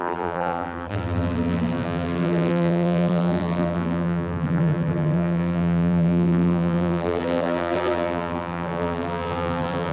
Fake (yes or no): yes